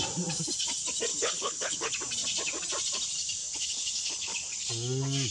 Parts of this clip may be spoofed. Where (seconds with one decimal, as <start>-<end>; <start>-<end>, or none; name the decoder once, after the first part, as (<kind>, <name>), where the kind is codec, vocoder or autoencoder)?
1.1-1.9 (codec, HILCodec); 3.4-4.7